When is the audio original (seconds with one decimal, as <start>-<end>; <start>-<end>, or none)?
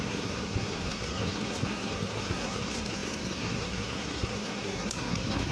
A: none